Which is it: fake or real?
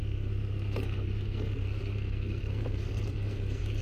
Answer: fake